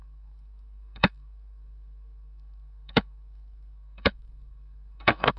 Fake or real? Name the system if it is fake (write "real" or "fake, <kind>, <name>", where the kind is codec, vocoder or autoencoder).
fake, codec, SNAC